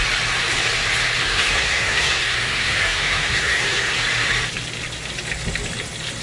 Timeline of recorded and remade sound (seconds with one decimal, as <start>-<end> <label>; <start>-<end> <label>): 0.0-1.2 recorded; 1.2-4.0 remade; 4.0-6.2 recorded